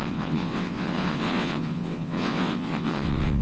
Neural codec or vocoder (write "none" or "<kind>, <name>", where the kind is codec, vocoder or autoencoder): vocoder, WaveNeXt